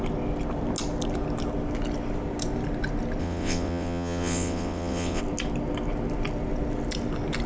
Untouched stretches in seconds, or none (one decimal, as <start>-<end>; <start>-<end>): 0.0-3.2; 5.2-7.5